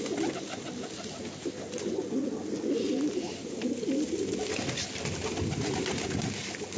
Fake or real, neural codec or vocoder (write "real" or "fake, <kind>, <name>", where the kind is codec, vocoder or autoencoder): real